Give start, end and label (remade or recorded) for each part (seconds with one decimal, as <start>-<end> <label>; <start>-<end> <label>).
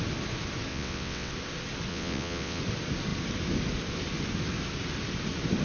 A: 0.0-0.7 recorded; 0.7-1.3 remade; 1.3-1.9 recorded; 1.9-2.6 remade; 2.6-5.6 recorded